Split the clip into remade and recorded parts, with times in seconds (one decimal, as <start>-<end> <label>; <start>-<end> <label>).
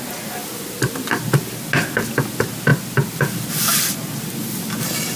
0.0-5.2 recorded